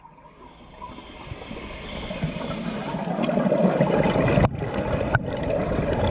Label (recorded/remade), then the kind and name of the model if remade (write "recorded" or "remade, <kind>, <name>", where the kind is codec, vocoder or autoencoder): recorded